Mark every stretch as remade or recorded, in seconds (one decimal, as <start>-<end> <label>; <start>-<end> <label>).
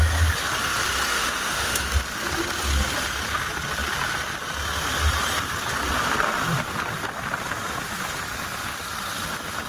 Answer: 0.0-1.1 recorded; 1.1-1.9 remade; 1.9-9.7 recorded